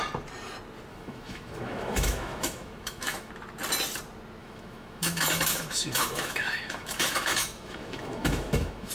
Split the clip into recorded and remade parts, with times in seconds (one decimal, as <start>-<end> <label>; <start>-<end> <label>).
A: 0.0-0.9 recorded; 0.9-3.3 remade; 3.3-4.4 recorded; 4.4-8.9 remade